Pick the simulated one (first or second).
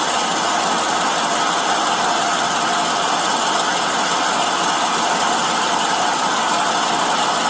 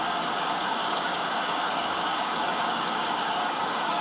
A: second